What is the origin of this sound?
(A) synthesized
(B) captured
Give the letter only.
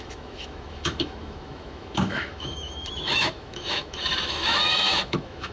A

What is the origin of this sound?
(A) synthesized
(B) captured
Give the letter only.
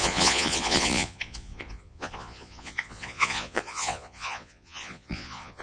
A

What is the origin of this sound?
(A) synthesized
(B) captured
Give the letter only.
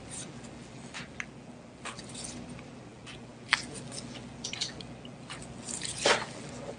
B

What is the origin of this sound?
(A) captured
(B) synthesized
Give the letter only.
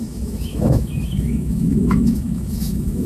B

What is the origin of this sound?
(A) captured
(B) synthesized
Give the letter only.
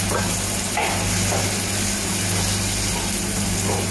A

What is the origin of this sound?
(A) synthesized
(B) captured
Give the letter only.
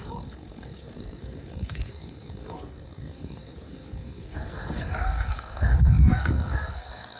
A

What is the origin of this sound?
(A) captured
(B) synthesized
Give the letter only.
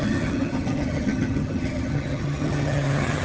B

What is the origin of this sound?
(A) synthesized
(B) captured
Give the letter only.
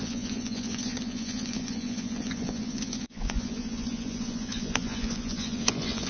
A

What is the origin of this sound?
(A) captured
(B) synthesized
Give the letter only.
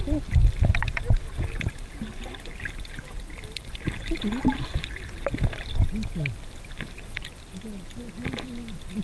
A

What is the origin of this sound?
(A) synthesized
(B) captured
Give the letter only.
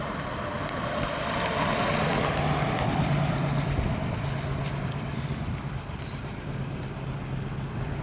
B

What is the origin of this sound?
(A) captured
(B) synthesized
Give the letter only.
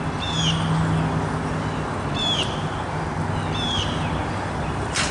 A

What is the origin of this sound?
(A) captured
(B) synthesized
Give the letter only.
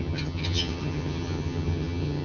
B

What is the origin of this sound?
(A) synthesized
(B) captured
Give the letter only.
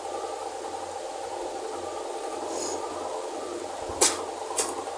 B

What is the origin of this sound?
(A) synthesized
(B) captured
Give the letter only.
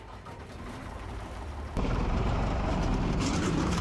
A